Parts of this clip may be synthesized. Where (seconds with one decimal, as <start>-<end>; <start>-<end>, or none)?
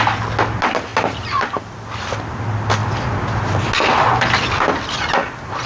none